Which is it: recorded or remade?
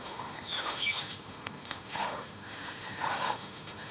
remade